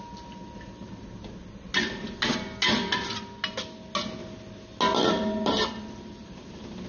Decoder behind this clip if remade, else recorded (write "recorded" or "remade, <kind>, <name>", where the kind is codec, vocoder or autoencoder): recorded